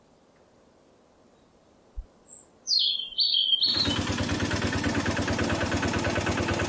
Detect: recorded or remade recorded